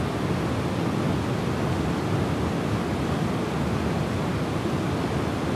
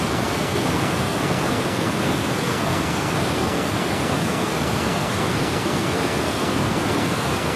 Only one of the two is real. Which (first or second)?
first